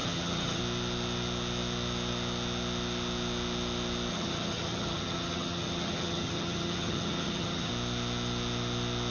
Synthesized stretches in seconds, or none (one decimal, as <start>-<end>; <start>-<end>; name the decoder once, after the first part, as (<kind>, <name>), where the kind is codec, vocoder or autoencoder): 0.0-0.6 (vocoder, HiFi-GAN); 4.1-7.7